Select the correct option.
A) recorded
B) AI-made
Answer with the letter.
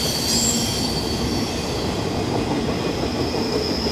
A